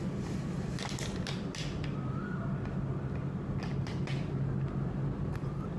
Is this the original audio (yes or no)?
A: yes